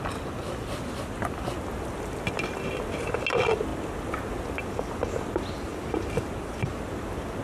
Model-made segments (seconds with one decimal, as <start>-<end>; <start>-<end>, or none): none